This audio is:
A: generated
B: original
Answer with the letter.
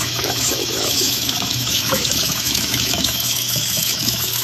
A